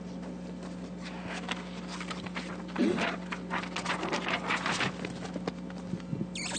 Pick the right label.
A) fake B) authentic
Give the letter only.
B